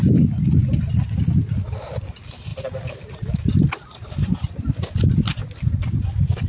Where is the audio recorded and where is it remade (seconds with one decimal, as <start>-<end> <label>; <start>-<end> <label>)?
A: 0.0-6.5 recorded